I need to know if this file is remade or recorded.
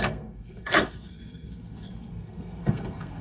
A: remade